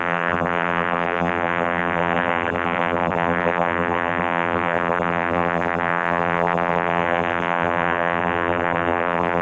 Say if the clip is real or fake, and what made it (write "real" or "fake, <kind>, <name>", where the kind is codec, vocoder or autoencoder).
fake, vocoder, BigVGAN v2